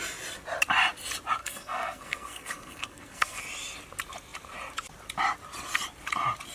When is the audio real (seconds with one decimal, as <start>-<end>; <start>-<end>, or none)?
0.0-1.4; 3.4-6.5